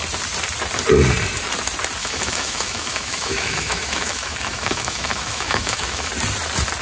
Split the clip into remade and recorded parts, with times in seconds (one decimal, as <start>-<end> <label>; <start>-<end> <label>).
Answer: 0.0-2.0 recorded; 2.0-6.1 remade; 6.1-6.8 recorded